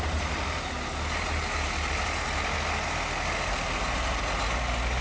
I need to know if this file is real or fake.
real